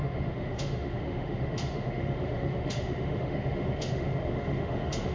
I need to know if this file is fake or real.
fake